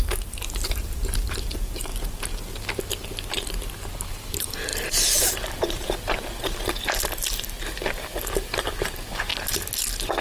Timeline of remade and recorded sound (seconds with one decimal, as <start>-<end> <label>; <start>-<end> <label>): 0.0-1.9 remade; 1.9-4.1 recorded; 4.1-9.3 remade; 9.3-10.2 recorded